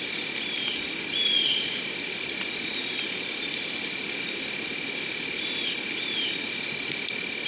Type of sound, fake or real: real